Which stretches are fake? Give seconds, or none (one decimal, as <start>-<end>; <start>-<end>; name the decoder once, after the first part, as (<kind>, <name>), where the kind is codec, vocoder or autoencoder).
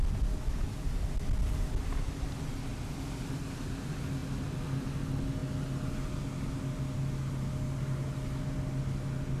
none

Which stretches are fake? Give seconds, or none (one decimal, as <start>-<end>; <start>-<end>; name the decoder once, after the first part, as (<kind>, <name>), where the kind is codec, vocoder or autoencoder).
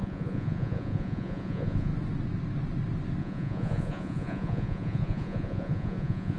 0.0-1.9 (vocoder, Vocos); 3.2-6.4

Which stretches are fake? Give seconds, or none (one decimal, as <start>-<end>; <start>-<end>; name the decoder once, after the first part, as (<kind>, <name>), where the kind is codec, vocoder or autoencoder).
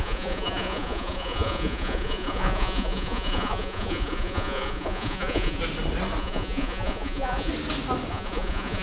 0.0-5.6 (vocoder, Vocos); 6.2-7.5; 8.1-8.8